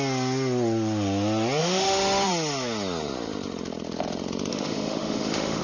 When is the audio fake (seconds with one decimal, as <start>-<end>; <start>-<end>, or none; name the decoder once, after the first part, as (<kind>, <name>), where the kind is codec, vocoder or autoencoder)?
1.6-2.3 (autoencoder, DAC-VAE); 4.5-5.6